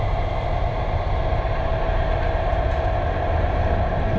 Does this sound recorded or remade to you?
remade